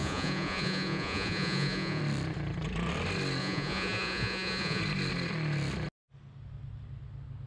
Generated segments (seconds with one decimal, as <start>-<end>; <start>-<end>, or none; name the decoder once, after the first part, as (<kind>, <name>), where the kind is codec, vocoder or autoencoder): 0.0-2.0 (vocoder, Vocos); 3.4-4.8